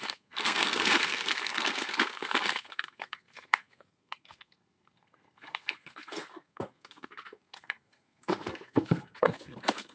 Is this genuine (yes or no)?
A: no